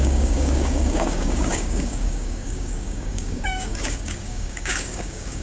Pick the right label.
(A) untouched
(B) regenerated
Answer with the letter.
B